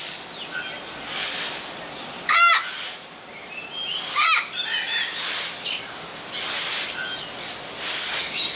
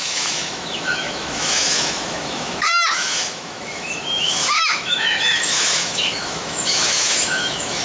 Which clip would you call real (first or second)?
first